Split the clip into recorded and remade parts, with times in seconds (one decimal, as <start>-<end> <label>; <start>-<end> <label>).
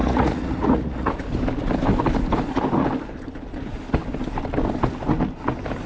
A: 0.0-1.1 remade; 1.1-5.9 recorded